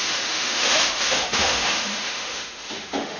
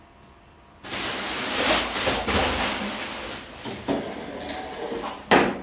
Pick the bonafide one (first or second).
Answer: second